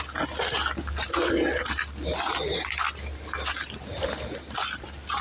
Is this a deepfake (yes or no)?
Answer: no